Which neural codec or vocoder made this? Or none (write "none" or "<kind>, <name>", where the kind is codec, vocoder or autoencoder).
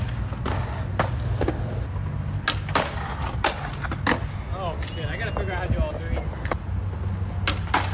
none